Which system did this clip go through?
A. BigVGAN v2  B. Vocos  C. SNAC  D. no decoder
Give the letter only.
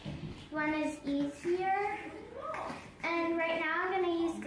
D